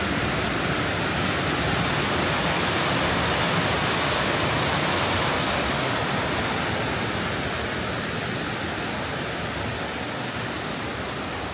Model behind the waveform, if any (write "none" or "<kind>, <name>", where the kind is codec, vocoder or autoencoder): none